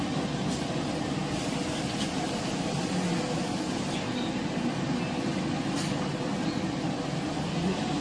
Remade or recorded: recorded